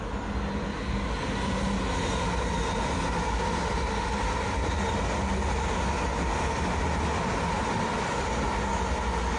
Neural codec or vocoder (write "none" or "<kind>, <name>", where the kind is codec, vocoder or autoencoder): none